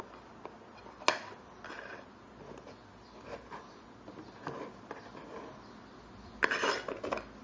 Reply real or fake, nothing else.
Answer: real